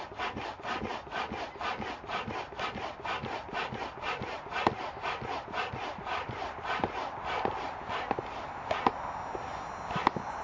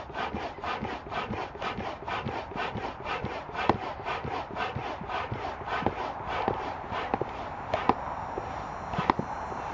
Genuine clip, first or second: first